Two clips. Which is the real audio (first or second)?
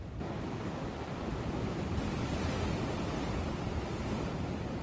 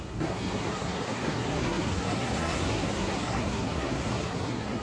first